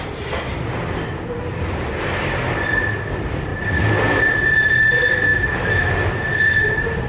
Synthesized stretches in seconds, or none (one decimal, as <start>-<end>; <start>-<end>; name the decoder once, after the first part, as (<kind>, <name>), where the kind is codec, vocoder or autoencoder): 5.3-5.9 (autoencoder, DAC-VAE)